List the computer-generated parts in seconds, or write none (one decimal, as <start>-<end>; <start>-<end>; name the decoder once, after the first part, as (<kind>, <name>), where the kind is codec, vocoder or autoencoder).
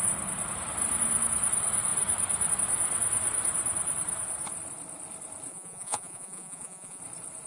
5.5-7.0 (vocoder, Vocos)